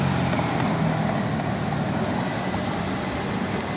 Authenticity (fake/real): real